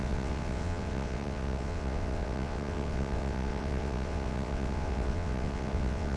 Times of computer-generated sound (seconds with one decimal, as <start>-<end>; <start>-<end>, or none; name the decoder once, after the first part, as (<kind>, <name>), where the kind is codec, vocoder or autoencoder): 0.0-6.2 (vocoder, WaveNeXt)